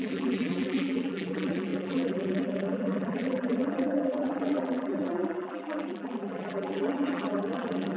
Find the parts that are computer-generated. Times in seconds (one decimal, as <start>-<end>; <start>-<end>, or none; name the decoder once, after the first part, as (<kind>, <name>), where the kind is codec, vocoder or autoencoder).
0.0-8.0 (vocoder, BigVGAN v2)